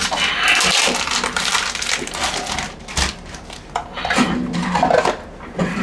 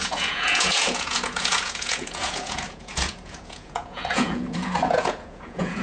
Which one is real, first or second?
first